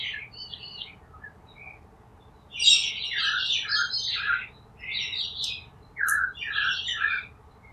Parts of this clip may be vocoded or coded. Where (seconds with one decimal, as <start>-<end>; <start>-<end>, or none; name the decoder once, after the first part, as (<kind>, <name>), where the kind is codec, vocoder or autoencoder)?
none